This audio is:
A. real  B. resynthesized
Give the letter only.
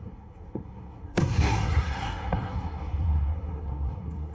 B